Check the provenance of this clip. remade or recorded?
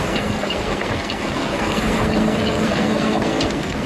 remade